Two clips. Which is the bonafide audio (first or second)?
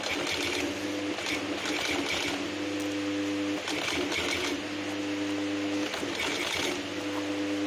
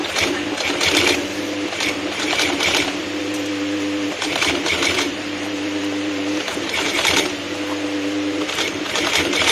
first